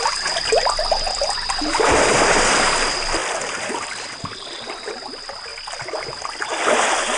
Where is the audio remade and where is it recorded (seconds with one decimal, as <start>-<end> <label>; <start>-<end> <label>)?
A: 0.0-7.2 recorded